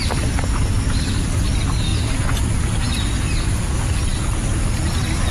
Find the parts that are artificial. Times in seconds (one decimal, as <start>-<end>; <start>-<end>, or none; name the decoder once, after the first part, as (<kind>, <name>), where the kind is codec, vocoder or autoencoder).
none